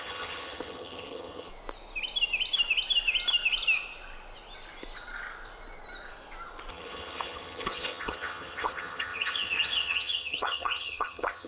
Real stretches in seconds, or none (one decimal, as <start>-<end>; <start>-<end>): 1.5-6.7